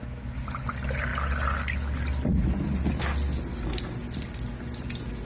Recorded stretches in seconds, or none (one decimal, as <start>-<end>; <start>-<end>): 0.0-5.2